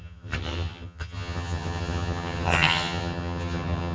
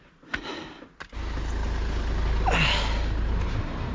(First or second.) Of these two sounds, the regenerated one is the first